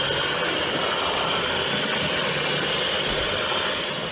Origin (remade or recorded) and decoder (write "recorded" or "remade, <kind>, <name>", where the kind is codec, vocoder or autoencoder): recorded